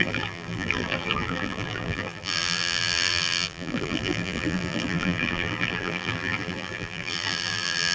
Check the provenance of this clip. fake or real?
fake